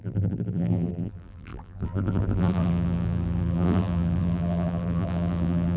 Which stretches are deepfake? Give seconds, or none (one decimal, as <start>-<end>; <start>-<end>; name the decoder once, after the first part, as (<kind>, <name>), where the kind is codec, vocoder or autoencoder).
0.0-5.8 (vocoder, BigVGAN v2)